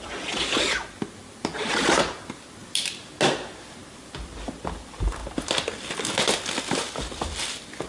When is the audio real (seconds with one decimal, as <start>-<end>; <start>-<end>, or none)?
0.0-7.9